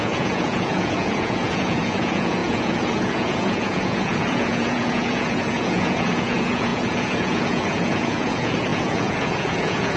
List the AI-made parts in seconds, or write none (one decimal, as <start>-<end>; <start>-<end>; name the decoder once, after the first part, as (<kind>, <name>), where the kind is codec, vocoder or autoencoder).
0.0-10.0 (vocoder, Vocos)